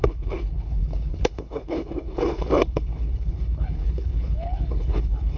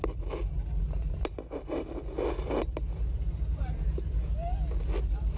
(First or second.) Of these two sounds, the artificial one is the first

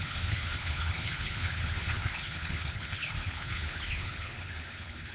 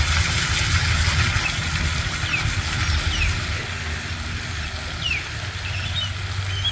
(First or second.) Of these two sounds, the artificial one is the first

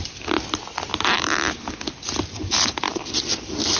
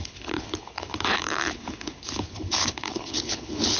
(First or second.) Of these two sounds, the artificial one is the second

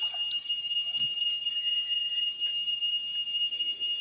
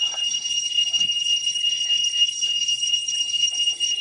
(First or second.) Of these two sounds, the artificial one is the second